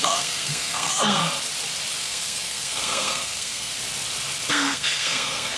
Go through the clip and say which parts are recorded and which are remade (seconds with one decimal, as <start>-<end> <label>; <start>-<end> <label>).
0.0-1.2 remade; 1.2-2.0 recorded; 2.0-3.7 remade; 3.7-4.5 recorded; 4.5-5.6 remade